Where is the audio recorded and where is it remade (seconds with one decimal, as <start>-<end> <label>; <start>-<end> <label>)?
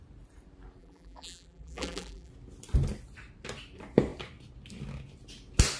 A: 0.0-0.8 recorded; 0.8-2.3 remade; 2.3-5.8 recorded